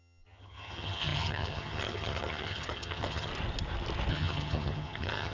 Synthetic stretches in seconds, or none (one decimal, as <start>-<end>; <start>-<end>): 0.0-3.3; 4.1-5.3